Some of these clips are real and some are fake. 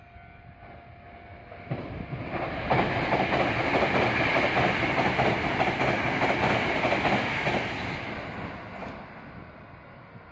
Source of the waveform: real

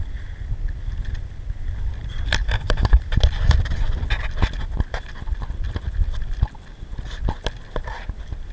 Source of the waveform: real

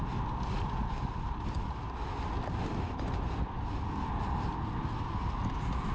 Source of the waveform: real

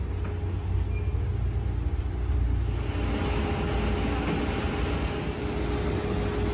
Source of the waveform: real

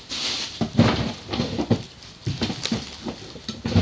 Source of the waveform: real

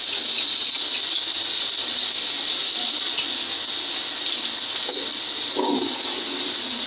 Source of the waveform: real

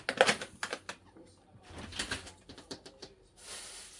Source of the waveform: real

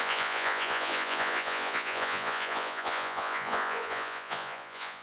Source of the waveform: fake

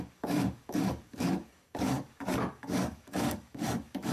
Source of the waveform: fake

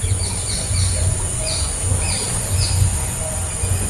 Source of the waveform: fake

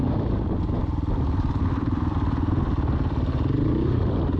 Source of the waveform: fake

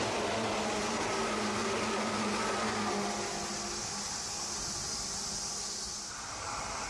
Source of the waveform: real